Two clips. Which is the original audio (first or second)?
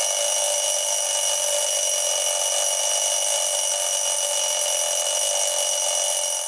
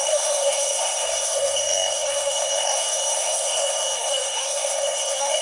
first